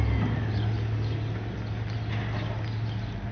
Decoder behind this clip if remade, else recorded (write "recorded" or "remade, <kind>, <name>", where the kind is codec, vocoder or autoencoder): recorded